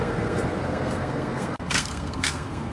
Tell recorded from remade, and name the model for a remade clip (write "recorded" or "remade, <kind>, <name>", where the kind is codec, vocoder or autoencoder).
remade, codec, SNAC